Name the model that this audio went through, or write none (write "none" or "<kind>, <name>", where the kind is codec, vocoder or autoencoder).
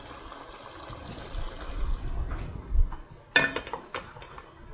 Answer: none